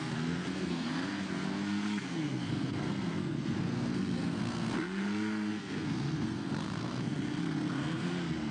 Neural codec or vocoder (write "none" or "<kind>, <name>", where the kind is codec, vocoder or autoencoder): codec, SNAC